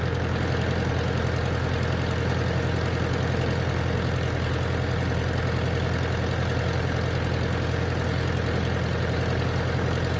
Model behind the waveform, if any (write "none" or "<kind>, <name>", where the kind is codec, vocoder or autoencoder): none